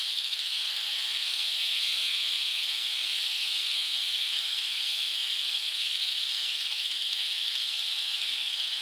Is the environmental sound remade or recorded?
remade